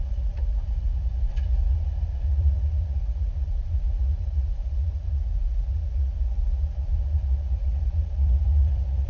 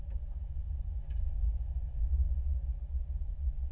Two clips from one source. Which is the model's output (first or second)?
first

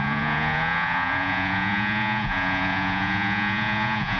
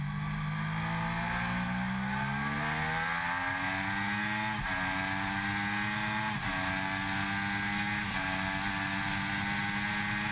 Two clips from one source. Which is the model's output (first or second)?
first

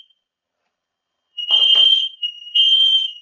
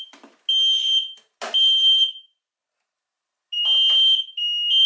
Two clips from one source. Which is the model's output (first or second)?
first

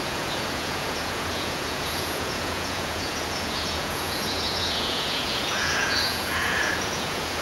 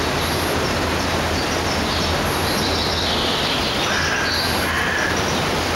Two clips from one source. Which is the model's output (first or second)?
first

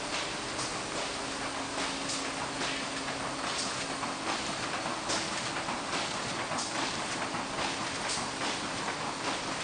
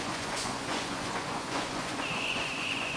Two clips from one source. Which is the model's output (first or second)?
second